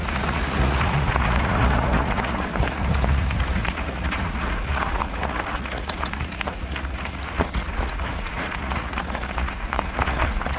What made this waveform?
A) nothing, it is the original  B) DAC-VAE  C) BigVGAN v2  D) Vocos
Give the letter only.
D